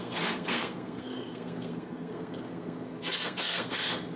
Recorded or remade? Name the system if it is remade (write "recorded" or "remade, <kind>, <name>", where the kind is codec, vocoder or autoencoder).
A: remade, codec, SNAC